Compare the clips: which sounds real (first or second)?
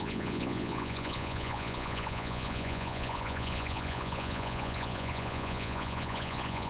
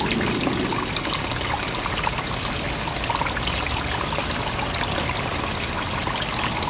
second